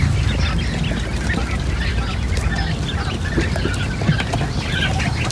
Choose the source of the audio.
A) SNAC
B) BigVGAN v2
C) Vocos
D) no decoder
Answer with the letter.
D